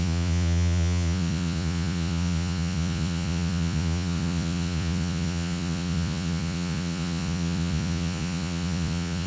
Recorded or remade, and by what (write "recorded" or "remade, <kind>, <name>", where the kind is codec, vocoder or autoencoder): remade, vocoder, Vocos